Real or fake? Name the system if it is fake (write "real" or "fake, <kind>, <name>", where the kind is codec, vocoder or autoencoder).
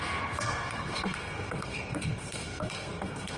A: fake, codec, SNAC